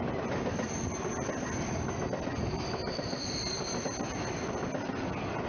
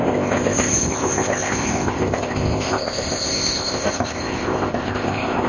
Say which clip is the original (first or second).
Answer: first